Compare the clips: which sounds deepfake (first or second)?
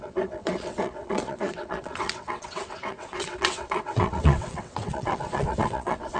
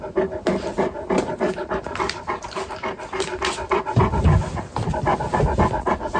first